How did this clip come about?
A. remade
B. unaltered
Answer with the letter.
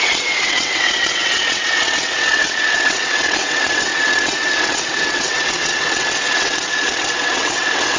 A